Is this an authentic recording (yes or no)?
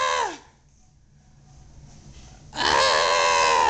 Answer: yes